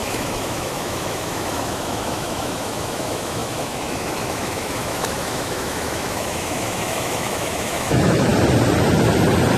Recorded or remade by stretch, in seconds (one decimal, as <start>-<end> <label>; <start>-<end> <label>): 0.0-8.3 remade; 8.3-9.6 recorded

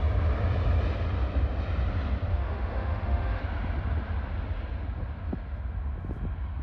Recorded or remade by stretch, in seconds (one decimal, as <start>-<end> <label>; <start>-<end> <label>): 0.0-2.3 recorded; 2.3-3.4 remade; 3.4-6.6 recorded

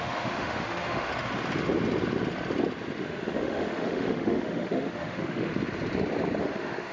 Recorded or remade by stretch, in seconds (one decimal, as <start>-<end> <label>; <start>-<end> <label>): 0.0-1.1 remade; 1.1-3.0 recorded; 3.0-5.5 remade; 5.5-6.4 recorded; 6.4-6.9 remade

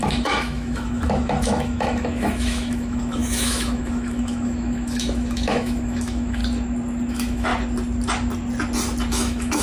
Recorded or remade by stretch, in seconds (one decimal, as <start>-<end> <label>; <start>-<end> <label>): 0.0-6.4 remade; 6.4-7.1 recorded; 7.1-7.5 remade; 7.5-9.1 recorded; 9.1-9.6 remade

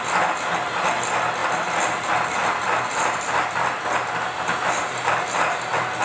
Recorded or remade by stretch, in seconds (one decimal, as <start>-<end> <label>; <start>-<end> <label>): 0.0-6.0 recorded

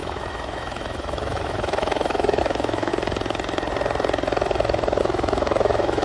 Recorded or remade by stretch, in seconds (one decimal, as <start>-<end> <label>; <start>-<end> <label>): 0.0-2.9 remade; 2.9-5.0 recorded; 5.0-6.0 remade